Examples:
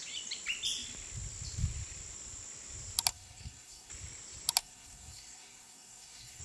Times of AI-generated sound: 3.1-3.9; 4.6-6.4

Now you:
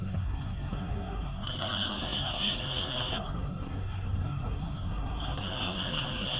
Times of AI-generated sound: 0.0-6.4

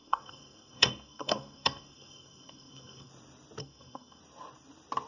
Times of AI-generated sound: 0.0-3.1; 3.6-4.2